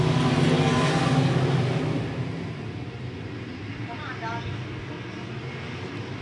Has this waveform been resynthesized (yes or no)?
no